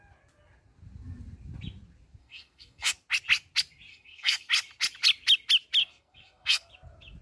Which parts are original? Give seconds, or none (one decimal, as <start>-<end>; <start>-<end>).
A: 0.0-2.2; 2.9-3.9; 4.5-5.8; 6.7-7.2